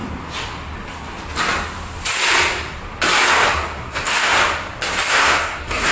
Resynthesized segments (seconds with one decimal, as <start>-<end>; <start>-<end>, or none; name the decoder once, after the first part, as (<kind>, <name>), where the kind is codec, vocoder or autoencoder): 3.5-4.4 (codec, SNAC); 5.1-5.9